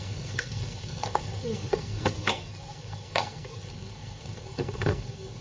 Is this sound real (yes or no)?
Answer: no